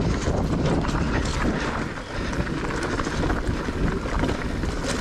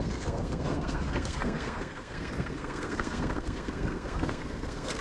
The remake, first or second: second